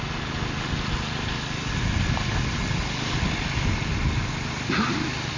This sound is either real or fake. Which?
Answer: real